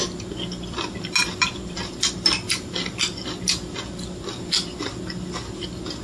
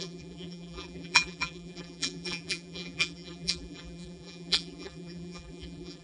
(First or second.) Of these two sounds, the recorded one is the first